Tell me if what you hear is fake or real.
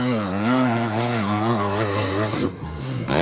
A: fake